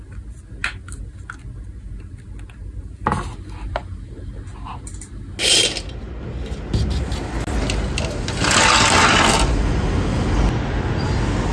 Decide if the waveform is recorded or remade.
recorded